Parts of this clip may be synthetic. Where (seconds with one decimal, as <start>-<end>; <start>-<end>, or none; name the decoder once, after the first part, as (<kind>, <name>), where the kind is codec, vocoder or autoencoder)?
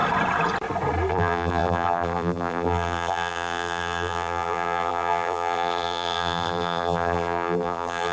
1.1-8.1 (vocoder, BigVGAN v2)